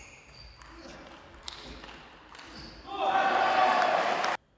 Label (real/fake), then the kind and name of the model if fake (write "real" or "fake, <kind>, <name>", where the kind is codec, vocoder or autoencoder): real